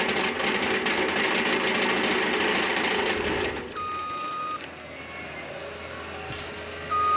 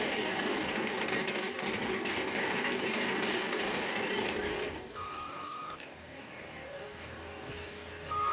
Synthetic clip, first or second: second